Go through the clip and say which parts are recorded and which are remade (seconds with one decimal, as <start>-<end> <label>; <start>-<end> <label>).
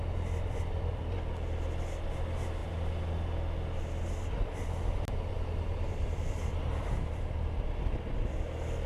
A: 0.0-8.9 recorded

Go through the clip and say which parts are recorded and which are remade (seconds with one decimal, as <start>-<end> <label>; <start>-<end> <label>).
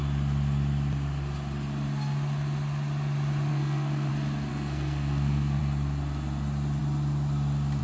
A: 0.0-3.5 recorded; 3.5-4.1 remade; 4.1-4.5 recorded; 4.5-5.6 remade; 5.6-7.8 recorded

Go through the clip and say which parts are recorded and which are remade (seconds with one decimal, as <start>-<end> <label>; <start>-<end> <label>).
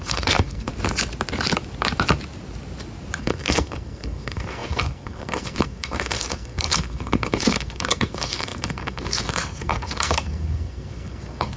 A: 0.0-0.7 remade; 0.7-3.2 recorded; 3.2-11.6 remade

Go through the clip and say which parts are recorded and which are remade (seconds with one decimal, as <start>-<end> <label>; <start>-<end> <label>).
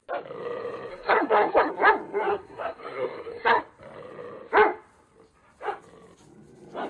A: 0.0-0.9 recorded; 0.9-1.7 remade; 1.7-2.3 recorded; 2.3-3.6 remade; 3.6-6.9 recorded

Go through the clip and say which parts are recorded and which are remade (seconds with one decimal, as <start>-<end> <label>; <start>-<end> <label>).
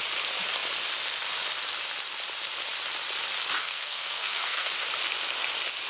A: 0.0-3.6 recorded; 3.6-4.7 remade; 4.7-5.9 recorded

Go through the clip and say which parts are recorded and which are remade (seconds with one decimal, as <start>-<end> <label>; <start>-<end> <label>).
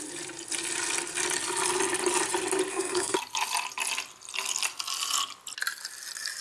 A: 0.0-2.7 recorded; 2.7-3.2 remade; 3.2-6.4 recorded